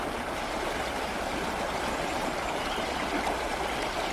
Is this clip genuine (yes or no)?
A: yes